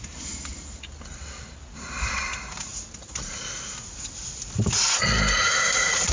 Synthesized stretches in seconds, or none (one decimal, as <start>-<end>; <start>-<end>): none